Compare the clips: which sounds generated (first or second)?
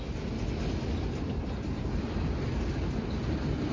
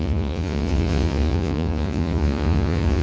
second